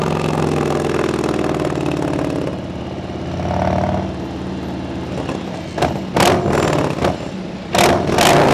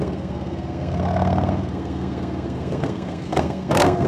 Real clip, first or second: first